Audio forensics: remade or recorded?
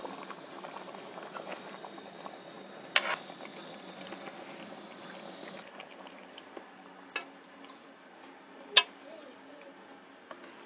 recorded